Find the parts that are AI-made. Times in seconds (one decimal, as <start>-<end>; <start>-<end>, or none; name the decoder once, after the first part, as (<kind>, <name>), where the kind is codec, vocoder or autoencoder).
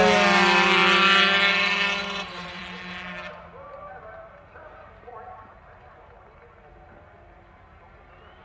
2.0-2.6 (vocoder, BigVGAN v2)